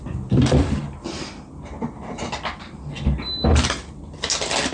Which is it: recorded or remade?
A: recorded